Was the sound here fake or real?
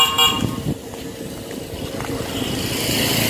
real